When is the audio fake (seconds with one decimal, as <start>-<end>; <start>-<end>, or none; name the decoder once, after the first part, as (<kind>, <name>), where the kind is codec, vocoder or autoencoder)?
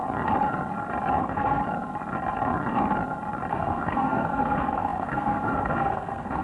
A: 1.2-1.6 (codec, SNAC); 3.5-6.4